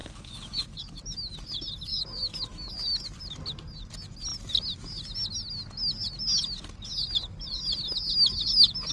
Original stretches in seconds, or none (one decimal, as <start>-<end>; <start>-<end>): 1.0-1.9; 2.7-8.9